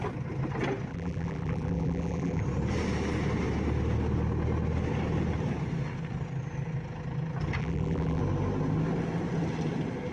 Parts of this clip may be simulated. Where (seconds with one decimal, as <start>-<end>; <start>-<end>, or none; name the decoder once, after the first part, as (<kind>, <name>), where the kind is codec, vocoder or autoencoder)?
0.9-2.4 (vocoder, BigVGAN v2); 7.6-8.2